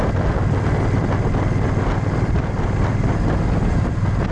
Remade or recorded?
recorded